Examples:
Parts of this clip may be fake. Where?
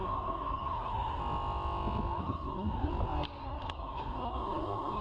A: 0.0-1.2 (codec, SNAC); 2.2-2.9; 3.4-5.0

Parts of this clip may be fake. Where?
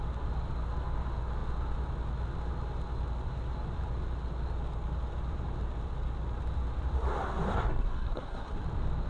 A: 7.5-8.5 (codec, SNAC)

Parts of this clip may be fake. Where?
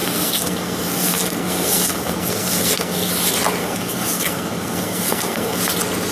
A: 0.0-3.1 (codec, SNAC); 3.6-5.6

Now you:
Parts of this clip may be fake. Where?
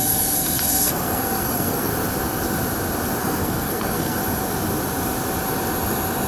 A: 0.0-1.9 (codec, SNAC); 3.2-4.2